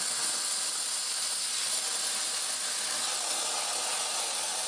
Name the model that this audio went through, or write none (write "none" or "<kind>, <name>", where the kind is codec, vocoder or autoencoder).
none